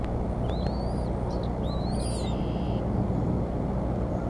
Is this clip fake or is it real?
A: real